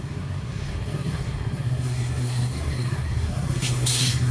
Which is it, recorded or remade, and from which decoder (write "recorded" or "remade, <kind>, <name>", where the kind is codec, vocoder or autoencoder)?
remade, codec, SNAC